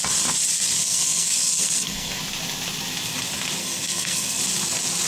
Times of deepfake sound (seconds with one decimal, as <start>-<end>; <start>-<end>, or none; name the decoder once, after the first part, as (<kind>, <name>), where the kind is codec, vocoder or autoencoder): 0.8-2.2 (codec, SNAC); 3.6-4.4